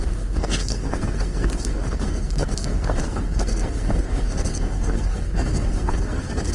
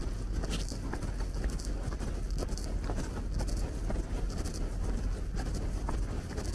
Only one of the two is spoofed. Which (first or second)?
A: first